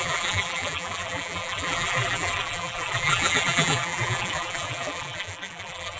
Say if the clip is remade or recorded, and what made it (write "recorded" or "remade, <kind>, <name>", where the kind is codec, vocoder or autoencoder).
remade, vocoder, BigVGAN v2